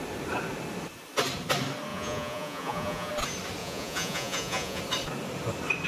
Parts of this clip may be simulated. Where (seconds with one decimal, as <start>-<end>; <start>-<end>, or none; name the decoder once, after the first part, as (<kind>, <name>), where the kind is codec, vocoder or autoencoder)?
1.9-3.1 (vocoder, Vocos); 3.6-4.8